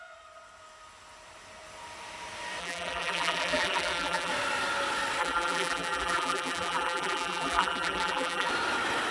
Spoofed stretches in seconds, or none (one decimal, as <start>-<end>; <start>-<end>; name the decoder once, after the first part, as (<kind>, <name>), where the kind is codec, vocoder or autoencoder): 2.6-4.3 (vocoder, BigVGAN v2); 5.2-8.5